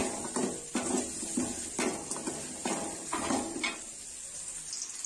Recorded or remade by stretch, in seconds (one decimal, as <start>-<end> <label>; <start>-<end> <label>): 0.0-5.1 recorded